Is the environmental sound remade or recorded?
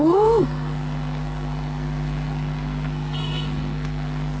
remade